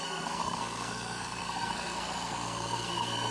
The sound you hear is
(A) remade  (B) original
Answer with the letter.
A